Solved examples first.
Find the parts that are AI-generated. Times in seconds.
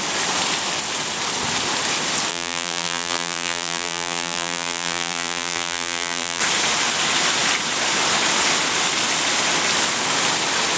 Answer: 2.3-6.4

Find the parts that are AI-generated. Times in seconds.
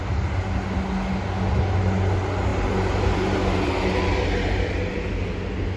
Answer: 2.5-5.3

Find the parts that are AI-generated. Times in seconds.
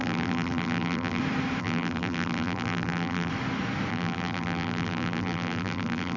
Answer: 0.0-1.2; 1.6-3.3; 3.9-6.2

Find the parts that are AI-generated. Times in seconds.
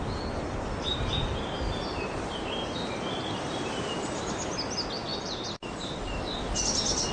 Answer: 0.9-4.2; 5.1-6.2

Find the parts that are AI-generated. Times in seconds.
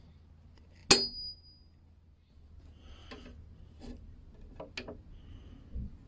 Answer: none